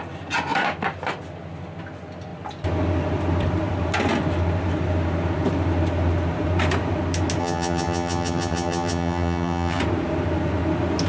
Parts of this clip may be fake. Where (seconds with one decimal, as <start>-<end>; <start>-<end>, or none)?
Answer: 7.4-9.8